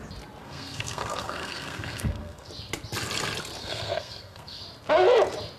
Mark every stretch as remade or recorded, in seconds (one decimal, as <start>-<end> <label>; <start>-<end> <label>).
0.0-0.4 recorded; 0.4-2.5 remade; 2.5-3.6 recorded; 3.6-4.6 remade; 4.6-5.6 recorded